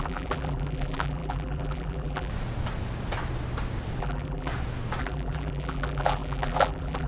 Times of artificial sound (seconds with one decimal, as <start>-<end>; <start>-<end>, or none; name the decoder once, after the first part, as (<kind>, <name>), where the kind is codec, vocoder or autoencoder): 0.0-2.3 (vocoder, BigVGAN v2); 4.0-4.5; 5.0-7.1